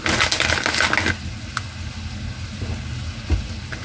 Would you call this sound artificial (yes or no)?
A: no